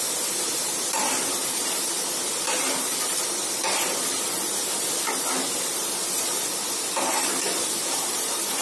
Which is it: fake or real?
fake